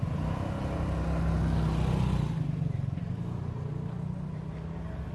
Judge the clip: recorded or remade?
recorded